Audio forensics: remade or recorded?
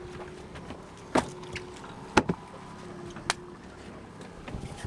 recorded